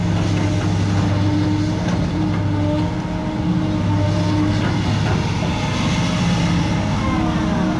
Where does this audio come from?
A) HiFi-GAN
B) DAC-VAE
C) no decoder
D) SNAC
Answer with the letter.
C